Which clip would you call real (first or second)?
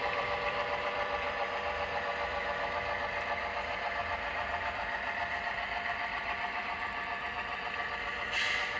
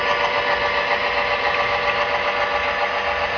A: second